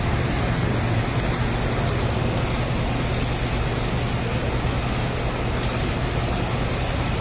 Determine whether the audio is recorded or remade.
recorded